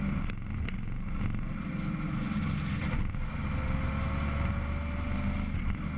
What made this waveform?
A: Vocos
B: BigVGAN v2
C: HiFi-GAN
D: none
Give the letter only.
D